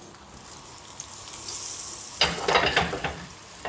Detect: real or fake real